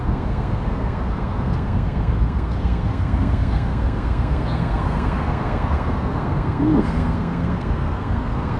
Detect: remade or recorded remade